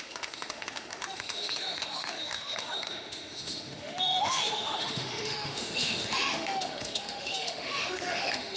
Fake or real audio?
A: fake